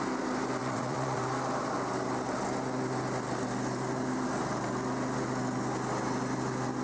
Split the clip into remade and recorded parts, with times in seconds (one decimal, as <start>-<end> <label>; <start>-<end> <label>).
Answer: 0.0-0.6 recorded; 0.6-1.2 remade; 1.2-6.8 recorded